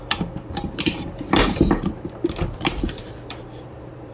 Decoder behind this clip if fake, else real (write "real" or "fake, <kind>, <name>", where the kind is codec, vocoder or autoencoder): fake, vocoder, BigVGAN v2